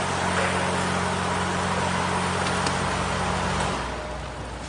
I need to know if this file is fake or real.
real